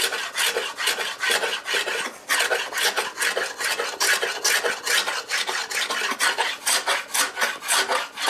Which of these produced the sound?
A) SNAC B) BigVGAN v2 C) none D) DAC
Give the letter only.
C